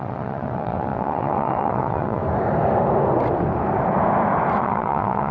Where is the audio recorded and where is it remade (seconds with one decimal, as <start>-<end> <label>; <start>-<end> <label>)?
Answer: 0.0-2.2 remade; 2.2-4.6 recorded; 4.6-5.3 remade